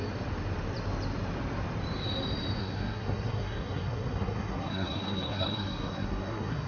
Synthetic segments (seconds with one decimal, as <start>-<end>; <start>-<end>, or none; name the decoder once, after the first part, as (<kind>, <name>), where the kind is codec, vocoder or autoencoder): 2.6-6.7 (codec, SNAC)